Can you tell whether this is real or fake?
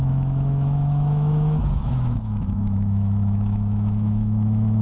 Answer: fake